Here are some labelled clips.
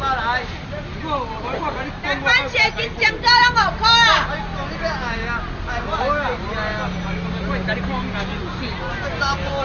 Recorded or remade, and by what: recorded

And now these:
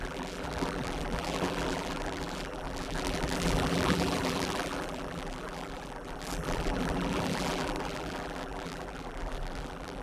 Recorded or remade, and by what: remade, vocoder, BigVGAN v2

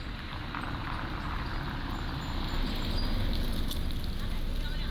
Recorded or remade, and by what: recorded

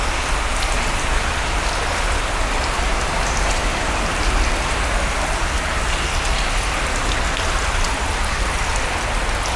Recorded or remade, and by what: recorded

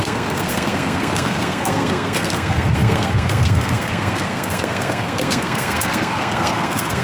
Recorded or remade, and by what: remade, codec, SNAC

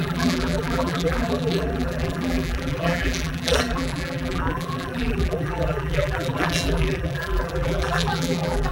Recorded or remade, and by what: remade, vocoder, BigVGAN v2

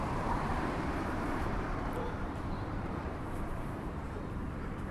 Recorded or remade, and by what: remade, vocoder, BigVGAN v2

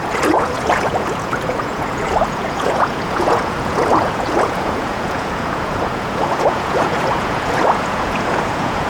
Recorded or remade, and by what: remade, vocoder, Vocos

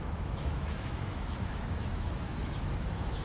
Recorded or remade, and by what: remade, autoencoder, DAC-VAE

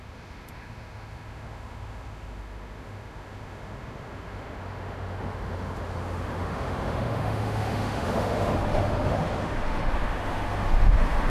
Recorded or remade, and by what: remade, autoencoder, DAC-VAE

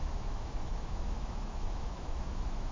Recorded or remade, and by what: remade, autoencoder, DAC-VAE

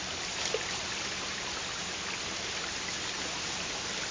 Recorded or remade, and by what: recorded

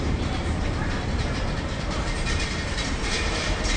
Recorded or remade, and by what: remade, vocoder, BigVGAN v2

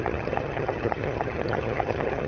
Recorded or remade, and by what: remade, vocoder, HiFi-GAN